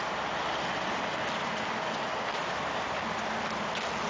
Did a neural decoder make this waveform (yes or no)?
no